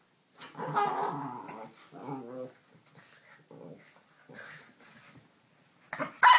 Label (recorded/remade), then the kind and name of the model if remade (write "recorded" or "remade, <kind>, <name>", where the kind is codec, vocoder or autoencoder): recorded